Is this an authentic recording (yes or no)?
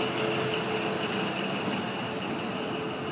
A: yes